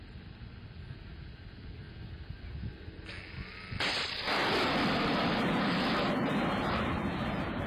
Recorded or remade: recorded